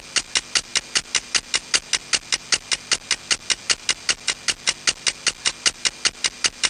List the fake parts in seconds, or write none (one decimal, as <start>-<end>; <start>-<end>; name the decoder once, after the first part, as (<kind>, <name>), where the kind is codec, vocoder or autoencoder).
none